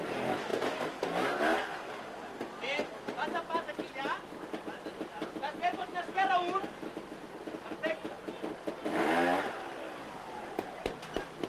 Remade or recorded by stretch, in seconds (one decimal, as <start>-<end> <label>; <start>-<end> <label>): 0.0-1.5 recorded; 1.5-2.4 remade; 2.4-11.5 recorded